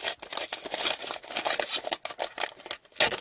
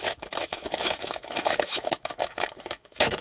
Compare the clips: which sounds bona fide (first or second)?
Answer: first